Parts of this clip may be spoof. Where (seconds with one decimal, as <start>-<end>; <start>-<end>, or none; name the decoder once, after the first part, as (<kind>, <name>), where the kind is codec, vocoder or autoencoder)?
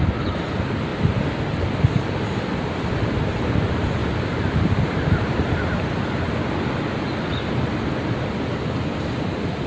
0.9-1.8 (vocoder, BigVGAN v2); 4.0-8.1